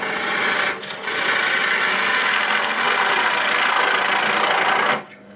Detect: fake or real real